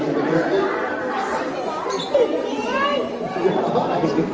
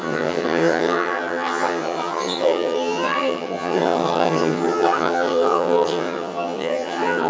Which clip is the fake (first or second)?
second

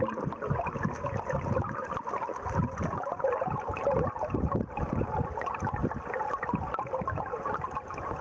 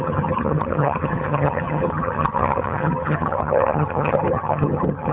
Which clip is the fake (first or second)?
second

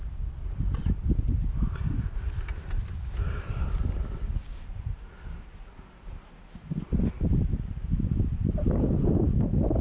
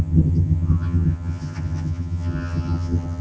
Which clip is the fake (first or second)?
second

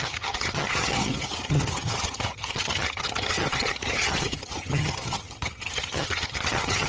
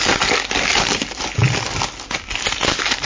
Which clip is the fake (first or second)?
first